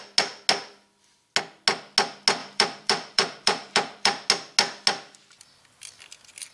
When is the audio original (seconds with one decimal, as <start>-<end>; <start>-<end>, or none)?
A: 0.0-2.4; 4.3-6.5